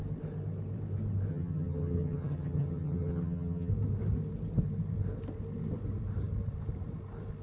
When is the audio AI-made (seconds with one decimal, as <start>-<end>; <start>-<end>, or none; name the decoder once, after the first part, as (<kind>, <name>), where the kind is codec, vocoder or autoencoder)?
1.3-3.7 (vocoder, HiFi-GAN)